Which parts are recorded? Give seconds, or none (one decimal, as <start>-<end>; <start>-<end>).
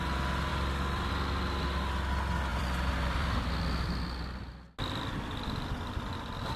0.0-0.5; 1.1-2.5; 4.5-6.6